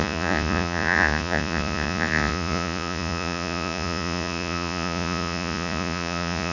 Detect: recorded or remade remade